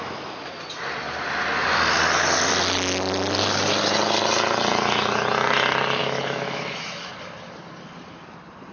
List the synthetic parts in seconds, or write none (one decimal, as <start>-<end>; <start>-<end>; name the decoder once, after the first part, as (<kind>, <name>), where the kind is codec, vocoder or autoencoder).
6.0-7.1 (autoencoder, DAC-VAE)